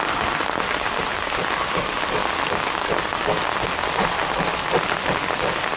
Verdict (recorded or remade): recorded